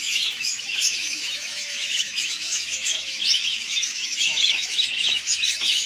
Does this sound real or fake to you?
fake